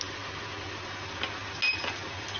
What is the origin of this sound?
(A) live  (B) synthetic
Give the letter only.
A